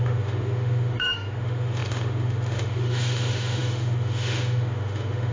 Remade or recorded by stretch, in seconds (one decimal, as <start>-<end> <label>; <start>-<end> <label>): 0.0-5.3 remade